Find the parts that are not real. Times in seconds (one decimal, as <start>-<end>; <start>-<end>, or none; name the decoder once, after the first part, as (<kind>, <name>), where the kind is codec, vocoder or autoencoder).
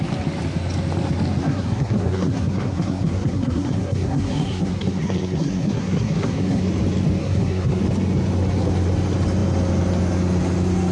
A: 1.4-6.6 (codec, SNAC); 7.2-7.8